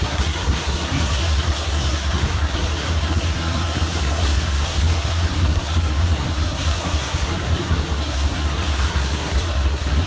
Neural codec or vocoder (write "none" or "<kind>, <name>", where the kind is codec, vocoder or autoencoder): codec, SNAC